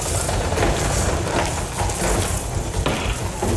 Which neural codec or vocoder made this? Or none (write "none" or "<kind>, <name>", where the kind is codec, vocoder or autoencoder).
none